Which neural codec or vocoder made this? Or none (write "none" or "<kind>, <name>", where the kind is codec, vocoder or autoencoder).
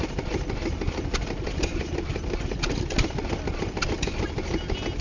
none